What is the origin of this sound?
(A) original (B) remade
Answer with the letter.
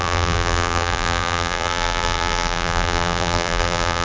B